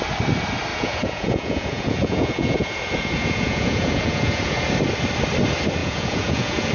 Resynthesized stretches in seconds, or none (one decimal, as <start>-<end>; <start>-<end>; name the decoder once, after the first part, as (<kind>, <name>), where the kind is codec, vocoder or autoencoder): 0.7-4.7 (vocoder, Vocos); 5.8-6.7